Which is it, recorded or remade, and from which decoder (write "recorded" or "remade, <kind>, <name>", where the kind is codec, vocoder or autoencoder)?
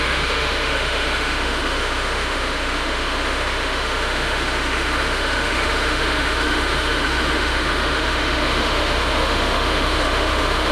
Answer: remade, autoencoder, DAC-VAE